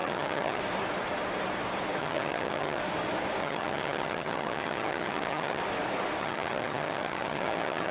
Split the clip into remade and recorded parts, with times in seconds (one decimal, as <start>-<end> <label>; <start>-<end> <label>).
0.0-0.6 remade; 0.6-2.0 recorded; 2.0-2.8 remade; 2.8-3.4 recorded; 3.4-5.6 remade; 5.6-6.2 recorded; 6.2-7.9 remade